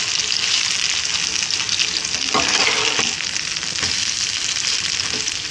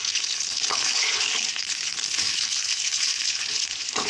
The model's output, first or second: second